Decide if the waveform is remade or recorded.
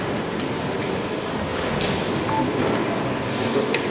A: recorded